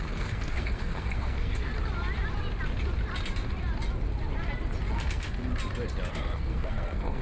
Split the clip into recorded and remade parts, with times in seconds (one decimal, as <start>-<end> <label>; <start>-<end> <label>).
0.0-1.7 remade; 1.7-4.9 recorded; 4.9-5.5 remade; 5.5-6.1 recorded; 6.1-7.2 remade